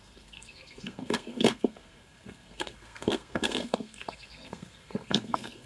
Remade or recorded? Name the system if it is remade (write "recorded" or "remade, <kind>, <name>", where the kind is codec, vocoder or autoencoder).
remade, codec, SNAC